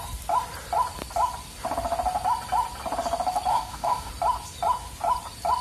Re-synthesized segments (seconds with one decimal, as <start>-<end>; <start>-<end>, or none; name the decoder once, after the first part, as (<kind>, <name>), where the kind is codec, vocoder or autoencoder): 3.5-4.1 (codec, DAC)

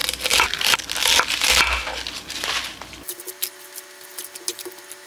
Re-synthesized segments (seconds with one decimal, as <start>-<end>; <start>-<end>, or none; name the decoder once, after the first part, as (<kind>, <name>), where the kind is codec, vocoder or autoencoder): none

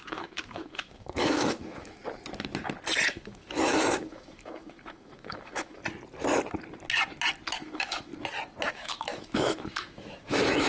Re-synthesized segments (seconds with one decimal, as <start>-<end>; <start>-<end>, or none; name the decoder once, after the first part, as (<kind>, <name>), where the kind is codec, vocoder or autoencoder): 0.0-2.0 (autoencoder, DAC-VAE); 3.1-5.8; 7.5-8.1; 8.7-10.7

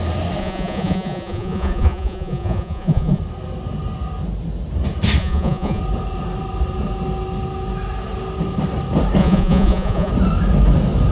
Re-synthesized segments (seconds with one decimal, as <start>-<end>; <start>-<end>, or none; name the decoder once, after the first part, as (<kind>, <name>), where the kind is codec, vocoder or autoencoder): 0.4-3.2 (vocoder, Vocos); 5.2-5.8; 9.2-10.1

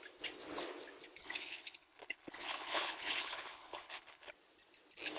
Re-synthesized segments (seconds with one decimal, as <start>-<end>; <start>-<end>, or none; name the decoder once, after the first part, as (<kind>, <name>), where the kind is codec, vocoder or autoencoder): 1.2-4.3 (codec, HILCodec)